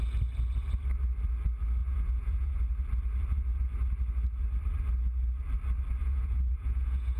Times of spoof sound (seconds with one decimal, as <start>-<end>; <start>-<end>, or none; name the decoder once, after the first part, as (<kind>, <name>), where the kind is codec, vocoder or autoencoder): 1.8-2.6 (vocoder, Vocos); 6.0-7.2